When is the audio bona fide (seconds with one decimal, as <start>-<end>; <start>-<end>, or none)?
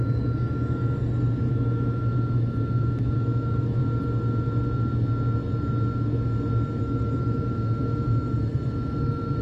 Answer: 0.8-1.5; 3.8-6.8